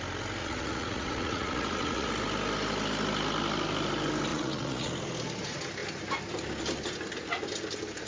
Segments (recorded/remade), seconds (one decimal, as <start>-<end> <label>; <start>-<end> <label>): 0.0-0.4 recorded; 0.4-2.1 remade; 2.1-4.3 recorded; 4.3-4.9 remade; 4.9-8.1 recorded